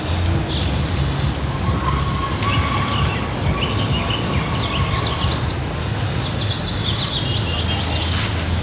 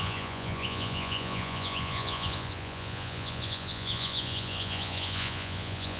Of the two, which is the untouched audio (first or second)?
first